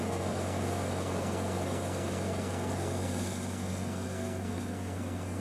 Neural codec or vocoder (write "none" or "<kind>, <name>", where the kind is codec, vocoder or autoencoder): codec, SNAC